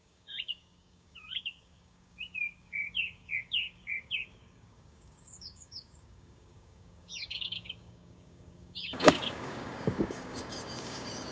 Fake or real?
fake